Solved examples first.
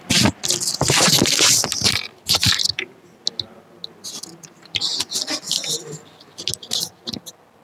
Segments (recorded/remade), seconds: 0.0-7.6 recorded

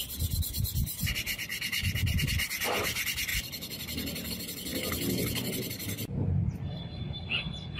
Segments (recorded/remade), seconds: 0.0-1.5 recorded; 1.5-2.2 remade; 2.2-3.3 recorded; 3.3-4.3 remade; 4.3-7.8 recorded